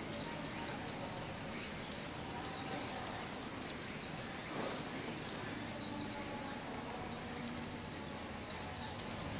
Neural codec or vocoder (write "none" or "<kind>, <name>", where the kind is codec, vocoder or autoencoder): none